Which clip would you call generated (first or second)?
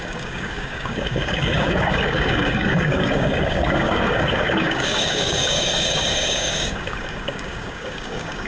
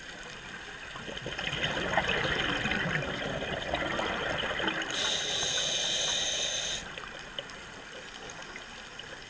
first